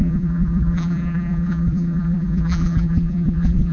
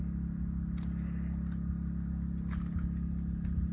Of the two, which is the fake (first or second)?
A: first